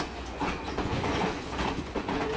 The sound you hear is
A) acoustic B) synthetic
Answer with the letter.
B